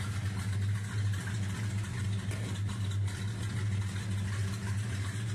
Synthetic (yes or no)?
no